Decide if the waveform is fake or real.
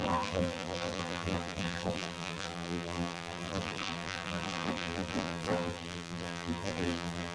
fake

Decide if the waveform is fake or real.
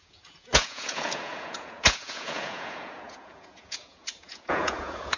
fake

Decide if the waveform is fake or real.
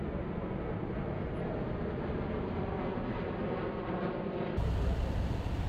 real